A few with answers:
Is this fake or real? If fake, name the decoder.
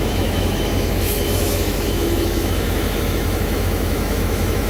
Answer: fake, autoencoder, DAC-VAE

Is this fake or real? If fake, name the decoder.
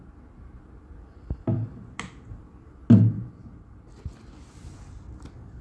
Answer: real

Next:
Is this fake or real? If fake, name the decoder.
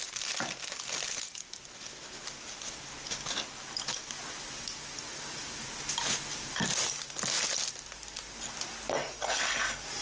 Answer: real